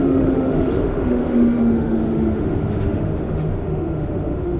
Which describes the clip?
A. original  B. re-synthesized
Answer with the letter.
B